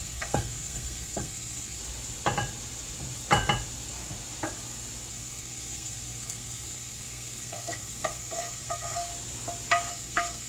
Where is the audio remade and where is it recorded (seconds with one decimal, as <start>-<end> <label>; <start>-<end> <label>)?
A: 0.0-1.8 remade; 1.8-5.1 recorded; 5.1-9.1 remade; 9.1-9.9 recorded; 9.9-10.5 remade